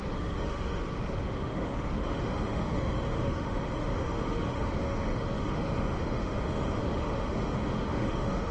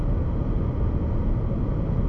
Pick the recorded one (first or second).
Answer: second